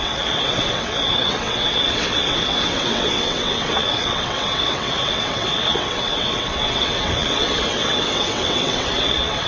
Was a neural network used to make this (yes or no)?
yes